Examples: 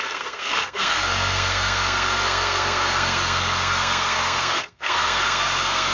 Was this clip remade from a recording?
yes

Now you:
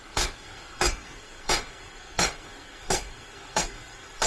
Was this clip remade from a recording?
yes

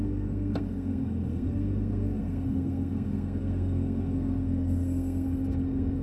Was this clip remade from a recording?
yes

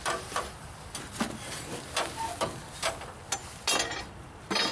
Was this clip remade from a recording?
no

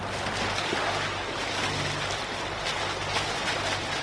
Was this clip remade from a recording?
no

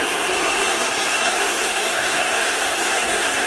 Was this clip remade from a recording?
yes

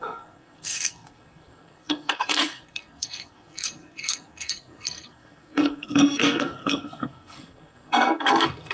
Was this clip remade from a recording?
yes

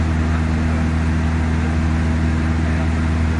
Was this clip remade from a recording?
no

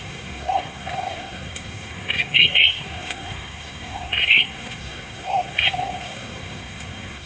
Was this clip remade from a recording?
yes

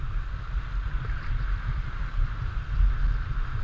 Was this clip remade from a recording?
no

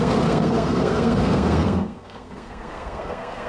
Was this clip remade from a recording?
yes